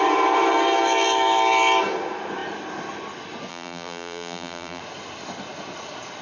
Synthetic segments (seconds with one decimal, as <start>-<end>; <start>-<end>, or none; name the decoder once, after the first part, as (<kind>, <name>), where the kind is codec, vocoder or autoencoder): 3.5-4.8 (vocoder, BigVGAN v2)